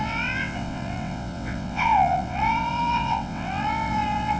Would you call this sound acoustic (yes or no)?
no